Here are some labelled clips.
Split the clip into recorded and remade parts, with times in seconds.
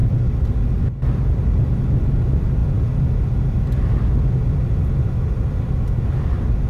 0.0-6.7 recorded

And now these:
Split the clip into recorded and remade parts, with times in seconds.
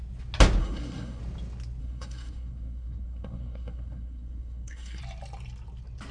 0.0-0.6 recorded; 0.6-1.2 remade; 1.2-1.8 recorded; 1.8-5.0 remade; 5.0-6.1 recorded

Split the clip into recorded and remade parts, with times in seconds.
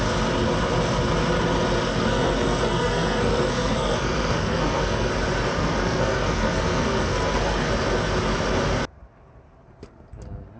0.0-1.9 recorded; 1.9-5.1 remade; 5.1-5.5 recorded; 5.5-7.7 remade; 7.7-10.6 recorded